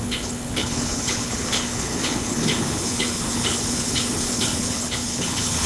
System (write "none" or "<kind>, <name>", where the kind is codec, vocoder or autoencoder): codec, HILCodec